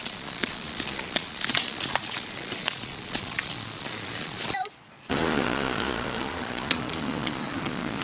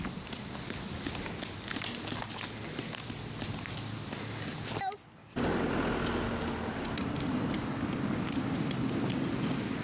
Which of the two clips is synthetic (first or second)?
first